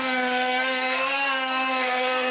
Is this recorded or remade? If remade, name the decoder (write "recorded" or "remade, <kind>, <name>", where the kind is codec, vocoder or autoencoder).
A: remade, codec, SNAC